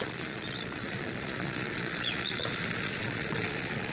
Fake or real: fake